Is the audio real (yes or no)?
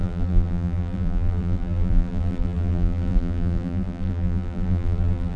no